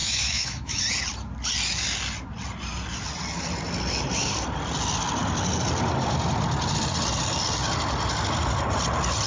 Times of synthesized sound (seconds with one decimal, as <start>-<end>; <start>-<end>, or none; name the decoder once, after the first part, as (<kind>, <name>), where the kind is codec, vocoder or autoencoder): 0.0-0.8 (autoencoder, DAC-VAE)